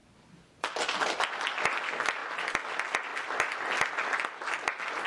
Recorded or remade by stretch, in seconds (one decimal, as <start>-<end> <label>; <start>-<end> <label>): 0.0-5.1 recorded